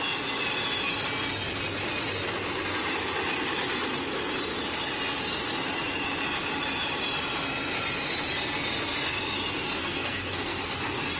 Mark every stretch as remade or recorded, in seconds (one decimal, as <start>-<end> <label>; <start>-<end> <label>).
0.0-9.8 recorded; 9.8-10.7 remade; 10.7-11.2 recorded